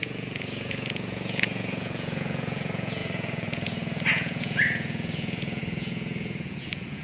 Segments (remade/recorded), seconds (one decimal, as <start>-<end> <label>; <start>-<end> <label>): 0.0-7.0 remade